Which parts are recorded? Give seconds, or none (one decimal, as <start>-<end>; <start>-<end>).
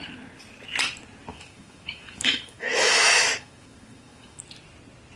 0.0-1.3; 4.4-5.2